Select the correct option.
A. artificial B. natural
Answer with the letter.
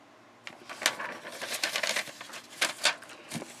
B